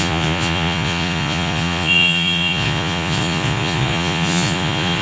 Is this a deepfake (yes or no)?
yes